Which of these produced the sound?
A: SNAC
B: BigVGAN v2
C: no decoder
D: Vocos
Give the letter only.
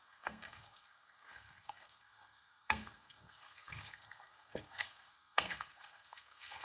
A